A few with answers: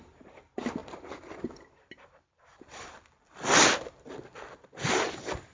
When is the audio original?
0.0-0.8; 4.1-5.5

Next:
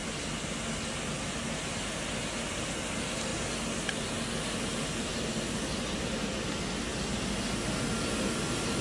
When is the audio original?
0.0-8.8

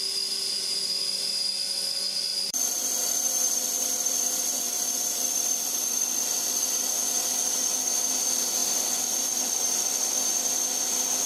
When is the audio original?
0.0-2.3; 6.8-8.6; 10.3-11.3

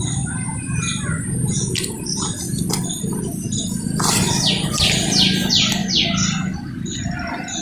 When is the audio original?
0.0-7.6

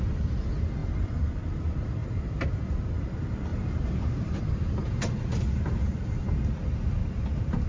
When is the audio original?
0.0-0.8; 1.3-2.0; 2.6-3.5; 4.4-7.0

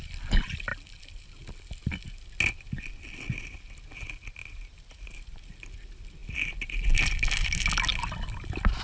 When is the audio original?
0.0-4.4; 5.5-8.8